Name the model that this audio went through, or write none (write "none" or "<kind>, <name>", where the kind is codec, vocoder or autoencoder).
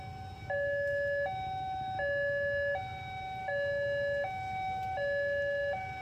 none